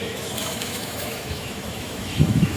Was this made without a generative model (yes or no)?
no